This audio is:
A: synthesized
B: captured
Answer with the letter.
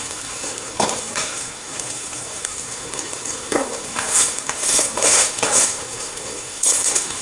A